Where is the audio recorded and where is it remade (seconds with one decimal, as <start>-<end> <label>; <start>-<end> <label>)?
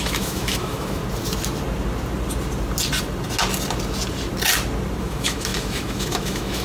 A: 0.0-1.0 remade; 1.0-5.0 recorded; 5.0-6.6 remade